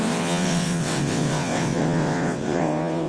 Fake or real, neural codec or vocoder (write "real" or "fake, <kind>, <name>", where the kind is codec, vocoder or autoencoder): fake, vocoder, WaveNeXt